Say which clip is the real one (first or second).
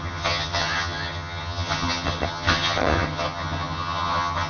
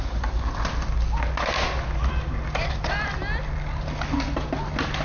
second